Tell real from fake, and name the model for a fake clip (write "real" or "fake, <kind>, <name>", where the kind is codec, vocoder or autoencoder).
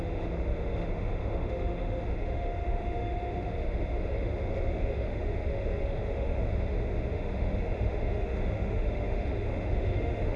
fake, autoencoder, DAC-VAE